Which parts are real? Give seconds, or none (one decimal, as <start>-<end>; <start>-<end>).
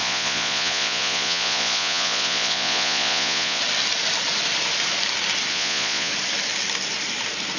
3.6-5.5; 6.1-7.6